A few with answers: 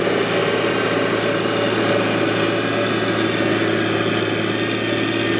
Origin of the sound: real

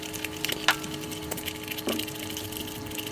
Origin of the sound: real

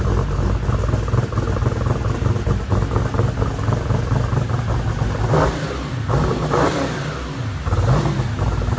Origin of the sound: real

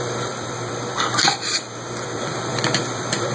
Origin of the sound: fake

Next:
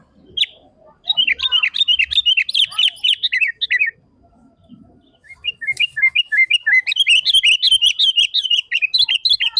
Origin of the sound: real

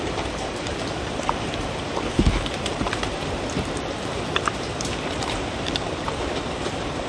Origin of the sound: fake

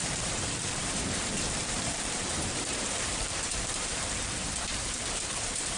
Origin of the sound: fake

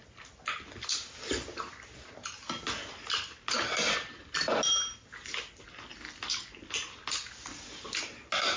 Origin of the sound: real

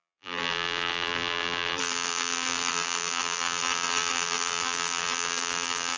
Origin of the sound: fake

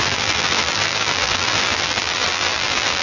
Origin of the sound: fake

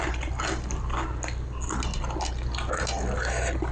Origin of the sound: real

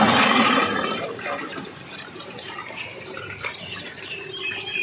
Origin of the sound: fake